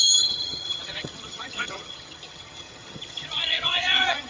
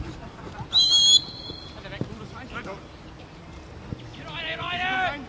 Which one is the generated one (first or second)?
first